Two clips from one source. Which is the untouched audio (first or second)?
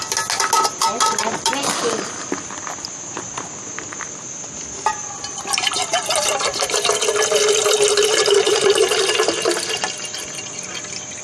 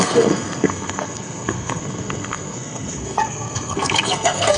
first